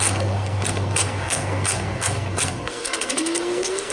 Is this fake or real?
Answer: fake